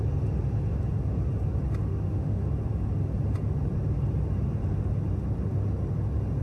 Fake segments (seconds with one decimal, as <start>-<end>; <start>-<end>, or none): 1.9-2.4